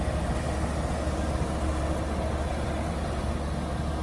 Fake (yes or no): no